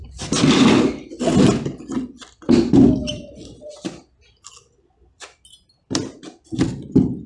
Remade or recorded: recorded